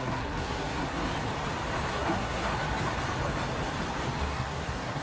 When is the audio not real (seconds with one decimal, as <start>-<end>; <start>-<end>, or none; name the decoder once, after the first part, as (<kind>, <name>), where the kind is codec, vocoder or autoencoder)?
0.0-1.1 (codec, SNAC); 1.9-2.5; 4.2-5.0